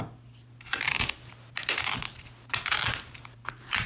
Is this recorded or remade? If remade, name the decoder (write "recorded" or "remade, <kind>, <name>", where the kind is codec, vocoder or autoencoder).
remade, vocoder, BigVGAN v2